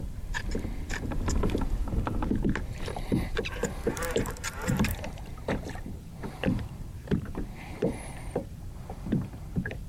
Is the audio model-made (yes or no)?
yes